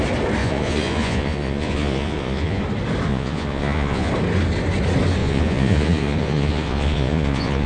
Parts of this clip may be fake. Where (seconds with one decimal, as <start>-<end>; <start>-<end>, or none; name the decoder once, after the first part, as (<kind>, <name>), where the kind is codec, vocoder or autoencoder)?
0.4-2.6 (vocoder, Vocos); 3.1-4.1; 5.2-7.7

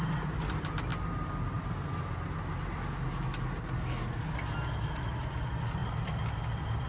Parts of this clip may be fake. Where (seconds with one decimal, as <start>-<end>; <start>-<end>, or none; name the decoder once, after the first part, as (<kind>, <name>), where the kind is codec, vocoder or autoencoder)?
none

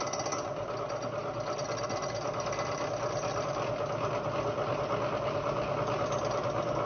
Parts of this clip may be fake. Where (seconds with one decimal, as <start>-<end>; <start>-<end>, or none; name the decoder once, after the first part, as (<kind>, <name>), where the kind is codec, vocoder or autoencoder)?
none

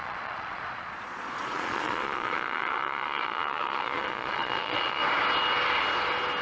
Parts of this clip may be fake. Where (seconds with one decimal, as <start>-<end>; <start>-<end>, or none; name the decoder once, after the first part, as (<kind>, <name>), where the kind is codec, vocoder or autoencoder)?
0.0-5.0 (vocoder, Vocos)

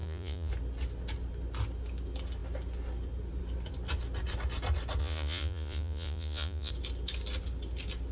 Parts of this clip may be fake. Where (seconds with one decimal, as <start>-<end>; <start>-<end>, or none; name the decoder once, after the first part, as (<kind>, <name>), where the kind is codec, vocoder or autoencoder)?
0.0-0.5 (vocoder, Vocos); 5.0-6.7